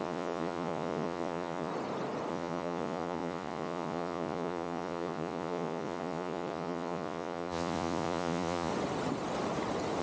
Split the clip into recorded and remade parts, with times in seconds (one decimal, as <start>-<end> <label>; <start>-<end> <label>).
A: 0.0-1.7 remade; 1.7-2.3 recorded; 2.3-8.7 remade; 8.7-10.0 recorded